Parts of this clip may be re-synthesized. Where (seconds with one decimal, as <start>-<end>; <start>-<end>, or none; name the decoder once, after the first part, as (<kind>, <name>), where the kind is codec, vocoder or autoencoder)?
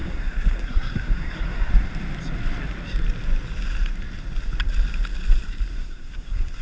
0.0-1.7 (codec, SNAC); 5.7-6.6